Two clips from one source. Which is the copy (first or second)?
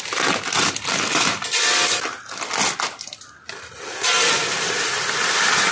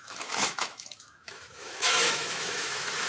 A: second